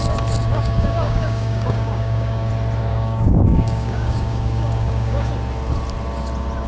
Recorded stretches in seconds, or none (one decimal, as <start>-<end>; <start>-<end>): 0.0-0.5; 2.5-2.9; 5.3-6.7